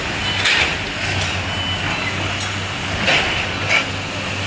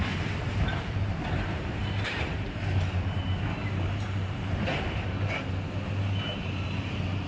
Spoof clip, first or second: second